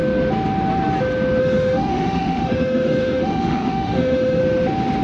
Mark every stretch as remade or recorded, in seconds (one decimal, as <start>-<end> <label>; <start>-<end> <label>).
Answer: 0.0-1.4 recorded; 1.4-4.4 remade; 4.4-5.0 recorded